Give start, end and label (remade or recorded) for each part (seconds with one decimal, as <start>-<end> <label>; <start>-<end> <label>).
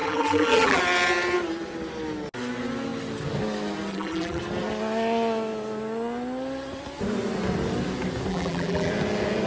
0.0-0.8 remade; 0.8-3.9 recorded; 3.9-4.4 remade; 4.4-8.3 recorded; 8.3-8.9 remade; 8.9-9.5 recorded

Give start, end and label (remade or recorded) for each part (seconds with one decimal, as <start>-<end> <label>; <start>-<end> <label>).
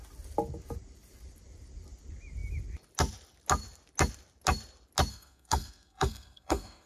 0.0-5.1 recorded; 5.1-6.9 remade